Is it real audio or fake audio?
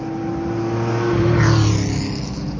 real